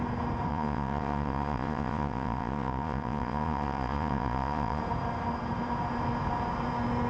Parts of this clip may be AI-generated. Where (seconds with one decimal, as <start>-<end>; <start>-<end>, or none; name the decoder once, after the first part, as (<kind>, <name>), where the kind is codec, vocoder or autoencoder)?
0.5-4.8 (vocoder, Vocos)